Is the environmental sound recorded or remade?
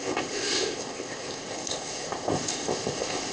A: remade